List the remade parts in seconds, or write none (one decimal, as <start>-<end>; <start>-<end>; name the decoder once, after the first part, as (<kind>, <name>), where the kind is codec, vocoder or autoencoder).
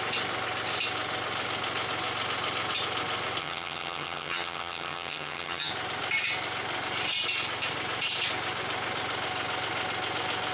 3.4-5.7 (vocoder, HiFi-GAN)